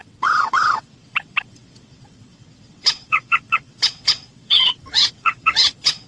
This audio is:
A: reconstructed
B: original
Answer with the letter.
A